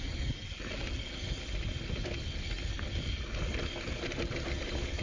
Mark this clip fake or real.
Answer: real